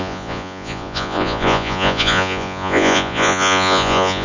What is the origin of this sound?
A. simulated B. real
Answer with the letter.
A